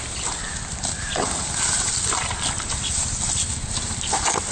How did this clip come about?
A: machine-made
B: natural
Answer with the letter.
B